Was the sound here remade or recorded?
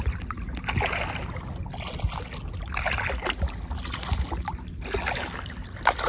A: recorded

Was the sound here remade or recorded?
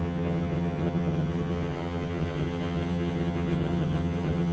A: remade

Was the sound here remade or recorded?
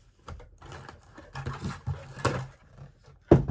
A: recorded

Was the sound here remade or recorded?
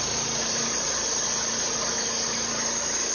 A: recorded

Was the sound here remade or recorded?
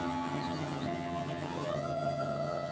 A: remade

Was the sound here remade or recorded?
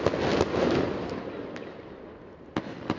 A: recorded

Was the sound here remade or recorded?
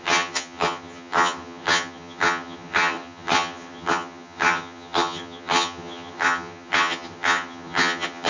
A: remade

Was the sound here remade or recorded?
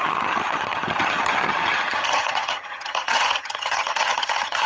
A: remade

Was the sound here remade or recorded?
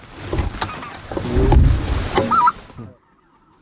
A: recorded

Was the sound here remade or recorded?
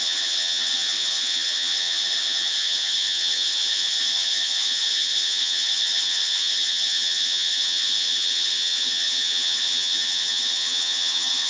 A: remade